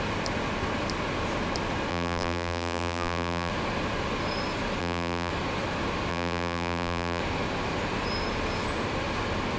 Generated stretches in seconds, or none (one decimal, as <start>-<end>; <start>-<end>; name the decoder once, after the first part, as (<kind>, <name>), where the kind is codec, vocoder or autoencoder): 1.9-3.5 (vocoder, BigVGAN v2); 4.8-5.3; 6.1-7.2